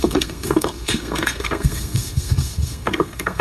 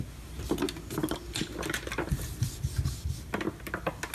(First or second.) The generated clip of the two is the first